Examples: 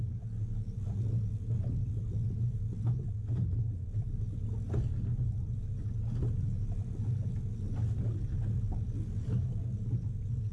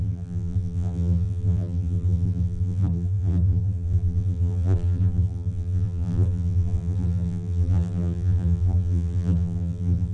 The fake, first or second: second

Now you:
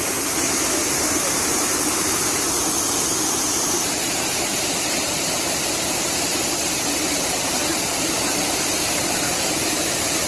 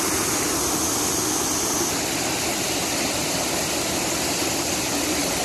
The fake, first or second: first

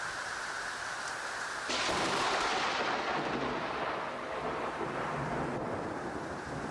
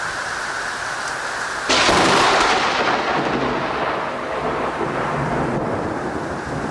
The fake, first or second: first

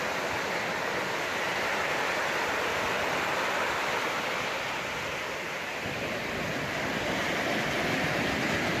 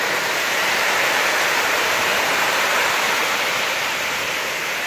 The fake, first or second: second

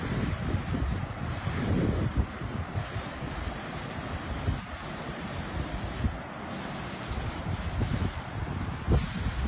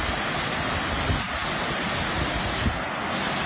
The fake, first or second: first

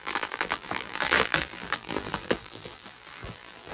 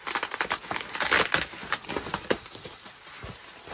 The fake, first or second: first